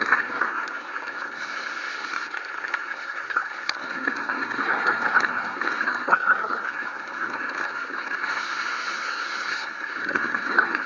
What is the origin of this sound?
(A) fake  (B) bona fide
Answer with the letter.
A